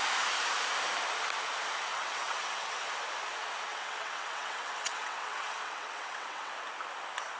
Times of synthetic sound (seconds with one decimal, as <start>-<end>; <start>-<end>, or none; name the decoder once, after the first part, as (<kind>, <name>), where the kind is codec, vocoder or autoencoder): 1.9-2.8 (vocoder, WaveNeXt); 3.7-6.5